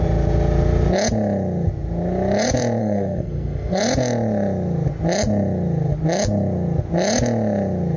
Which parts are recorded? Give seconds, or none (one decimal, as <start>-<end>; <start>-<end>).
0.0-2.8; 3.8-8.0